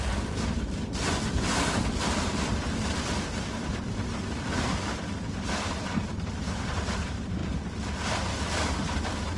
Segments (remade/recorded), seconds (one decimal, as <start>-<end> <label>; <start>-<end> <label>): 0.0-7.4 remade; 7.4-8.9 recorded; 8.9-9.4 remade